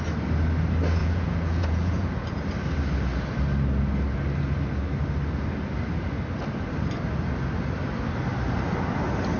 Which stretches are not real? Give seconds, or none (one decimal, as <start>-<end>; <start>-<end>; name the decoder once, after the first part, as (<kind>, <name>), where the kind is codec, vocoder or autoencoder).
1.0-2.4 (vocoder, Vocos)